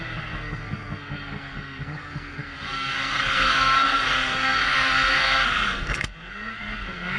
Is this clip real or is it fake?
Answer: fake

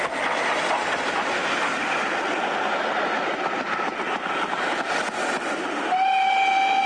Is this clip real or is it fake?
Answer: real